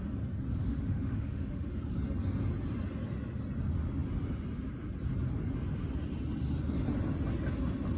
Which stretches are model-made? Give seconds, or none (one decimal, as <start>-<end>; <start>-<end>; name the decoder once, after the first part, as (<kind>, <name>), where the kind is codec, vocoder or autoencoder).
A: 0.6-1.8 (autoencoder, DAC-VAE)